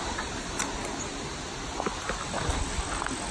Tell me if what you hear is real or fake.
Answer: real